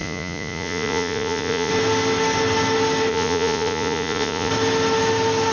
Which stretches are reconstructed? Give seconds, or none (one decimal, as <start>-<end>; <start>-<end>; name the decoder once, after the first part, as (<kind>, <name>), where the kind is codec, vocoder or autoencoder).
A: 0.0-1.7 (vocoder, Vocos); 3.1-4.5